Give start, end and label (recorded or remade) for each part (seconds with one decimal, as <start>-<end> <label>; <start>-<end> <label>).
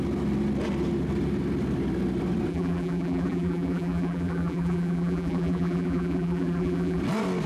0.0-2.5 recorded; 2.5-7.0 remade; 7.0-7.5 recorded